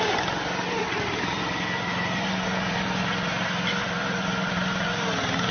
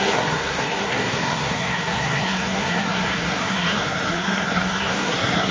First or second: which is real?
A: first